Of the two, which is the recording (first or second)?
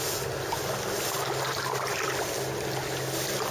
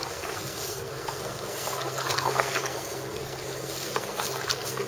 first